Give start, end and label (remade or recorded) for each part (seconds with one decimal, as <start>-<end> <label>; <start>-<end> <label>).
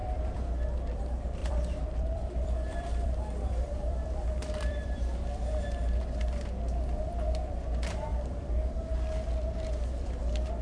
0.0-1.0 remade; 1.0-1.4 recorded; 1.4-5.0 remade; 5.0-8.1 recorded; 8.1-8.9 remade; 8.9-10.6 recorded